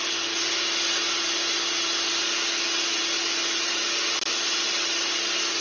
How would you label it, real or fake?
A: real